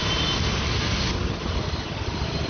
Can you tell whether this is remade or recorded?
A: recorded